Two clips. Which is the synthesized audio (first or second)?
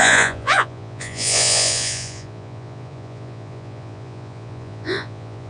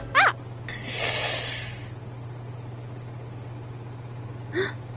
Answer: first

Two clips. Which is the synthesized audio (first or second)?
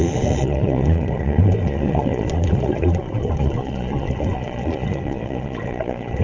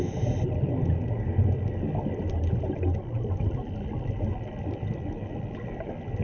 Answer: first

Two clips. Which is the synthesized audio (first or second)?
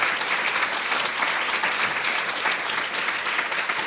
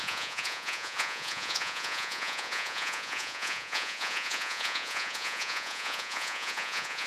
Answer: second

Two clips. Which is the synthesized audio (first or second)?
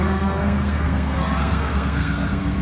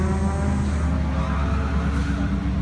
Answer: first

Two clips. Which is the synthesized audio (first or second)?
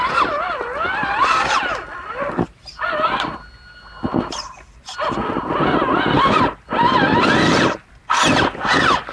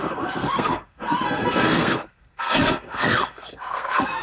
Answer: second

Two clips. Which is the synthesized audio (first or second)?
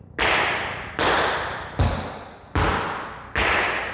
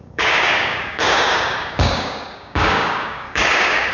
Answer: second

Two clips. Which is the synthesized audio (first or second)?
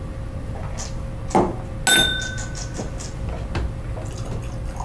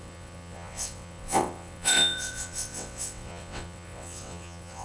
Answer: second